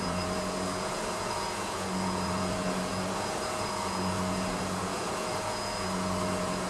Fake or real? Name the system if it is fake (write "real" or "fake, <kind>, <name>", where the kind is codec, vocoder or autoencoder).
fake, vocoder, Vocos